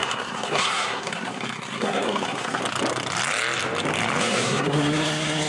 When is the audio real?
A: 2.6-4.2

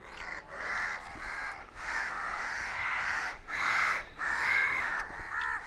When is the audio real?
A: 0.0-1.6; 5.0-5.7

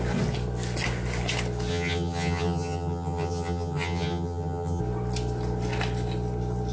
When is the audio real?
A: 0.0-1.7; 4.8-6.7

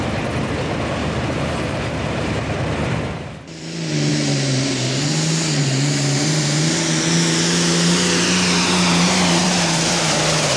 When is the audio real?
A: 0.0-1.0; 2.3-4.1; 6.6-9.4

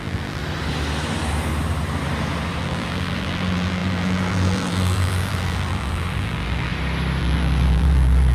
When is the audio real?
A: 0.4-2.6; 6.7-7.2

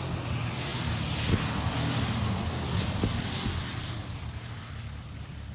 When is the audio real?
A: 0.0-5.5

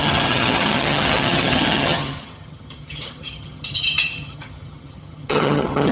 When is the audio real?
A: none